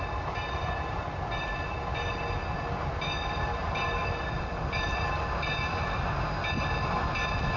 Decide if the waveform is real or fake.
real